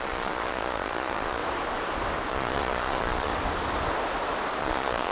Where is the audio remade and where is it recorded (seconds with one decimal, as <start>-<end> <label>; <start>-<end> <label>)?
0.0-1.4 remade; 1.4-2.3 recorded; 2.3-3.3 remade; 3.3-4.6 recorded; 4.6-5.1 remade